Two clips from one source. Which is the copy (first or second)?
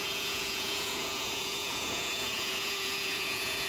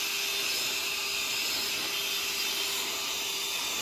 first